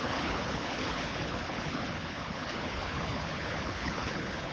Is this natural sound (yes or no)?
no